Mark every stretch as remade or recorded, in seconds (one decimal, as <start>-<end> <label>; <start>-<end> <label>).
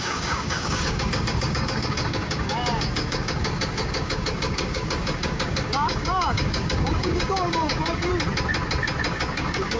0.0-8.1 remade; 8.1-9.1 recorded; 9.1-9.8 remade